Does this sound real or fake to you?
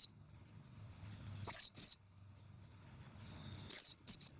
fake